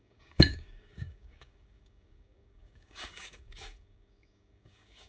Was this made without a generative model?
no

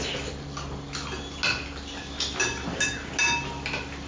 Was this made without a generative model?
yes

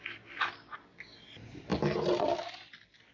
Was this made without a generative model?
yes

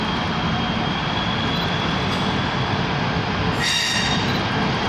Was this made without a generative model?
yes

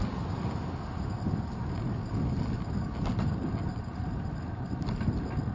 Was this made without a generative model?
yes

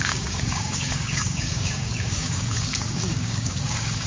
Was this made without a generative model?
no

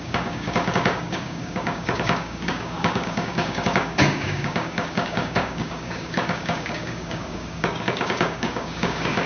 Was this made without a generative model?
no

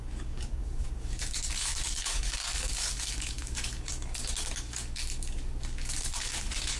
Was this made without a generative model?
no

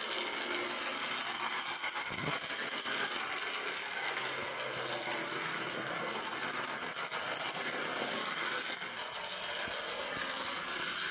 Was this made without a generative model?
yes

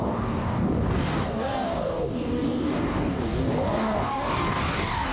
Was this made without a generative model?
no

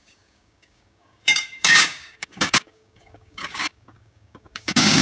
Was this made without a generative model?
no